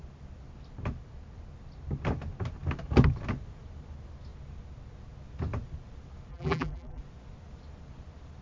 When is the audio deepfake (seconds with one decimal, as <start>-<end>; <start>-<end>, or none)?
6.3-7.0